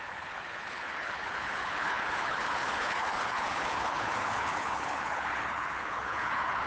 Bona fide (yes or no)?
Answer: no